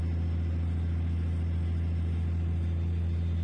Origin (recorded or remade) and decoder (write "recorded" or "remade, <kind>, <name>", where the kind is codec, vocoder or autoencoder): recorded